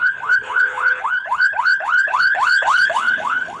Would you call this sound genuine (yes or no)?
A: no